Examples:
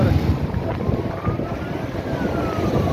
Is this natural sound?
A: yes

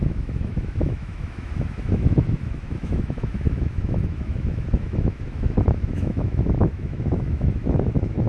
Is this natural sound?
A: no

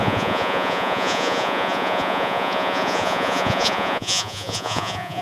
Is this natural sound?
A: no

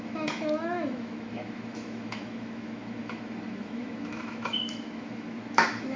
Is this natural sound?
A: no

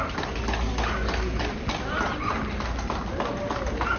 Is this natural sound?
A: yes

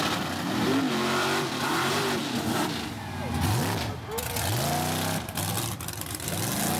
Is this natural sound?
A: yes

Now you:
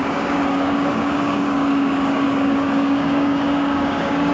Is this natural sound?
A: no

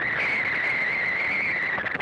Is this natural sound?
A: yes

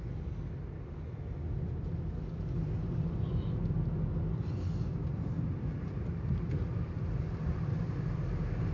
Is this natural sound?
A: yes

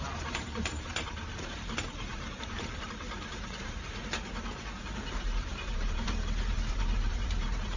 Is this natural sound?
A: no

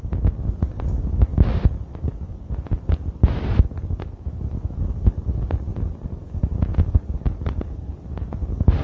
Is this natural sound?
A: yes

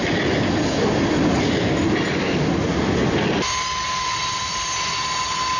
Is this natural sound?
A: yes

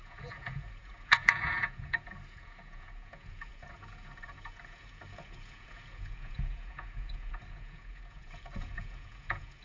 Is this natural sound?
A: no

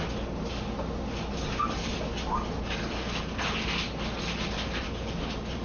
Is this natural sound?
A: yes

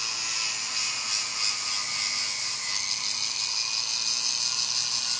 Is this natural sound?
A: yes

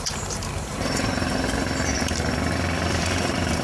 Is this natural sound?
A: no